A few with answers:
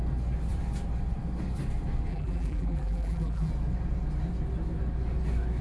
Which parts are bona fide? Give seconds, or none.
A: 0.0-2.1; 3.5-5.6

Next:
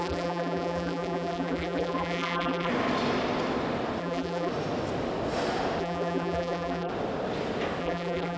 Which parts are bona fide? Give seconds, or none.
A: 2.7-4.0; 4.5-5.8; 6.9-7.8

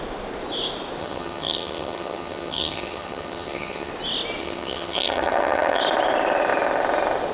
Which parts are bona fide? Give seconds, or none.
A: 0.0-1.0; 3.9-4.4; 5.8-7.3

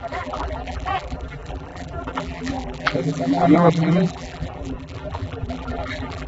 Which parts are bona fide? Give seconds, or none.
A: none

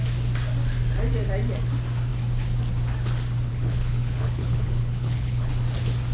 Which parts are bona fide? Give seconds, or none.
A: 0.0-3.5; 5.5-6.1

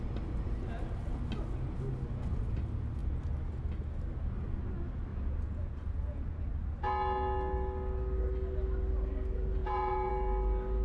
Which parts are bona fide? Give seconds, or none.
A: 0.0-5.1; 6.4-9.6; 10.1-10.8

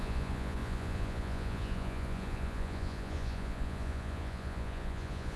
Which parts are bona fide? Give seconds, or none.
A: none

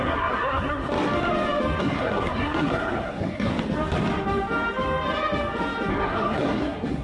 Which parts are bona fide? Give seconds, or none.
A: 0.9-1.8; 3.5-5.9